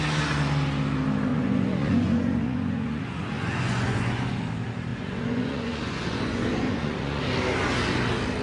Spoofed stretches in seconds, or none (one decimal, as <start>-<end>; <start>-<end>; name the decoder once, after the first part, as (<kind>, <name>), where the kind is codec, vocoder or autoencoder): 1.3-4.4 (vocoder, Vocos); 4.9-7.2